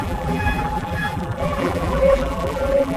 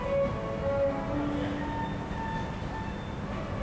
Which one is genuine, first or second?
second